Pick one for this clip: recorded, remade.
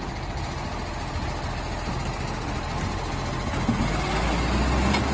recorded